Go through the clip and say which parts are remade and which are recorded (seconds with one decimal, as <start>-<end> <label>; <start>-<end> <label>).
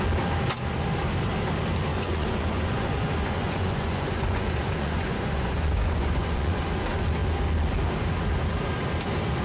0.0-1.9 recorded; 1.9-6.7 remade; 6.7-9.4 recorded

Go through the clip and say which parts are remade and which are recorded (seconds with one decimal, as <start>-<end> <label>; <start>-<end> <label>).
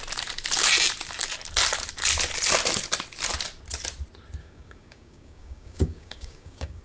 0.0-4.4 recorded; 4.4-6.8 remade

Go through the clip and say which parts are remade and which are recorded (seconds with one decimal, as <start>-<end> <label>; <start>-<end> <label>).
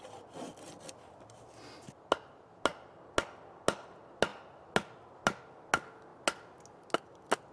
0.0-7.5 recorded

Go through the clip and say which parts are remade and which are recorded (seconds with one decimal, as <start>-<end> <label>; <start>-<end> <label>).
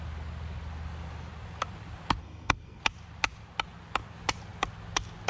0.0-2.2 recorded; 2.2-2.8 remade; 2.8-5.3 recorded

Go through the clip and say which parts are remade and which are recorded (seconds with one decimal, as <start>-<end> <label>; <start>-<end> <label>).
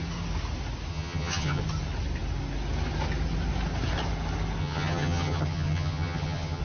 0.0-0.9 recorded; 0.9-1.6 remade; 1.6-4.6 recorded; 4.6-6.6 remade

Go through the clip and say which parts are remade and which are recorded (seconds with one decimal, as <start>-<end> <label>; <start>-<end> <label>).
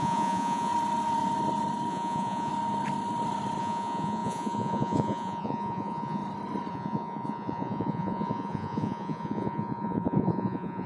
0.0-0.7 remade; 0.7-1.9 recorded; 1.9-2.5 remade; 2.5-3.6 recorded; 3.6-6.2 remade; 6.2-6.7 recorded; 6.7-10.9 remade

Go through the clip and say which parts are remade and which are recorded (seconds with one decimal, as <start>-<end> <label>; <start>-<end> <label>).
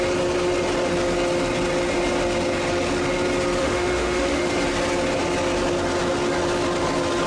0.0-3.6 recorded; 3.6-4.5 remade; 4.5-7.3 recorded